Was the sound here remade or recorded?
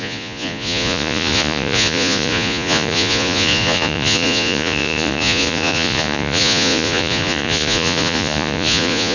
remade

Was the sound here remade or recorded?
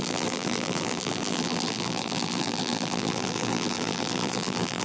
remade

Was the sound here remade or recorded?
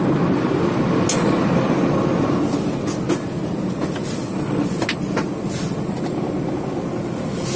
recorded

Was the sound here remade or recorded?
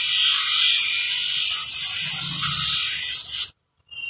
recorded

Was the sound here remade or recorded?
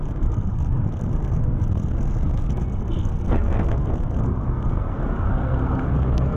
remade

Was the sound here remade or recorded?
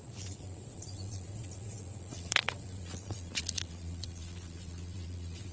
remade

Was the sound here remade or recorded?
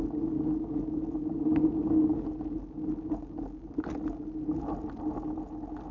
recorded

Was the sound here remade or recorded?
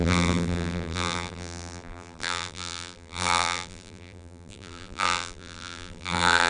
remade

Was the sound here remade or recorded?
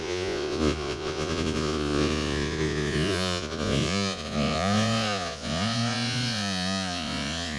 remade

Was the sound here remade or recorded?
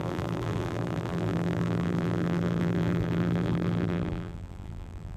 remade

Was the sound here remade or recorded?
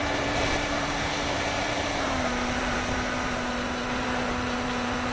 remade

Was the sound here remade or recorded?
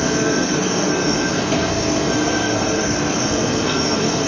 remade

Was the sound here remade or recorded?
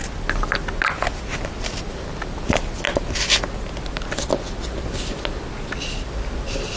recorded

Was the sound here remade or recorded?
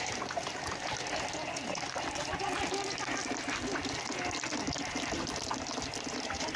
recorded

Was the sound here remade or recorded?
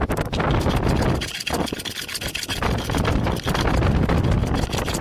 recorded